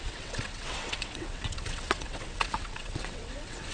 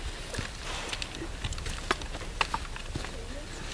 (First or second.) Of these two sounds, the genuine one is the second